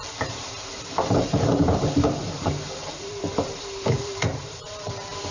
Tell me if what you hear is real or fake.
fake